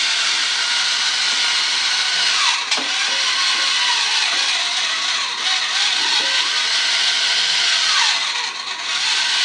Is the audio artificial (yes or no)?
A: no